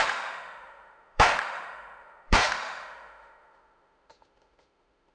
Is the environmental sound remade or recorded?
remade